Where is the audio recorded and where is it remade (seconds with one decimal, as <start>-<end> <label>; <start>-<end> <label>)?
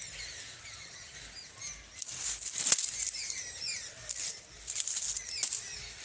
0.0-6.0 recorded